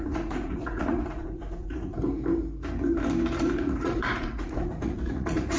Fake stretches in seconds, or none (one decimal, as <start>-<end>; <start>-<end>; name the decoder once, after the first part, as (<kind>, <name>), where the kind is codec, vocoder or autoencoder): 0.0-2.0 (vocoder, Vocos); 3.4-5.6